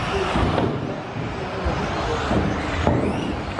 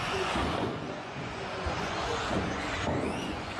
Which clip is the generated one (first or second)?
second